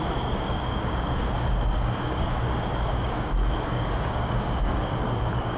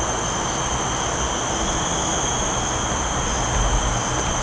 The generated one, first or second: first